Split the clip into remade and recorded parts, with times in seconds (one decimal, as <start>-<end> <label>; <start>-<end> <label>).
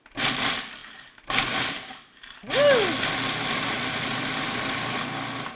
0.0-5.6 recorded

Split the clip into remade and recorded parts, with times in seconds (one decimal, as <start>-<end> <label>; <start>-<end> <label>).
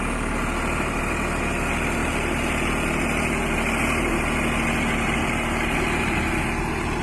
0.0-7.0 recorded